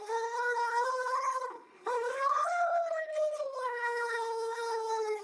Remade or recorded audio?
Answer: remade